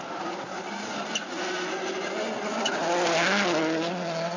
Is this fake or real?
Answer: real